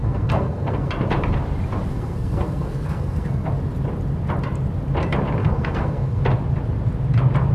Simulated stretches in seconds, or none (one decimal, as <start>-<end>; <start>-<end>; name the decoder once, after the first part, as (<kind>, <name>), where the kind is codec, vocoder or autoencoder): 0.0-0.9 (codec, SNAC); 1.9-3.5; 5.4-6.2